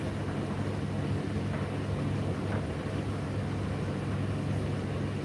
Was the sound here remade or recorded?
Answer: recorded